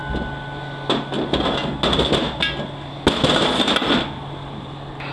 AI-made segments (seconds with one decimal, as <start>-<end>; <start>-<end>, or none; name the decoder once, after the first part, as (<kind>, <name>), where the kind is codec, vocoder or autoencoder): none